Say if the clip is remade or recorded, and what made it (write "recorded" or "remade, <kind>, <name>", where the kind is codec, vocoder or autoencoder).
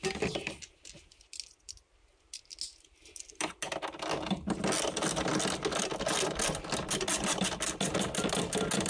recorded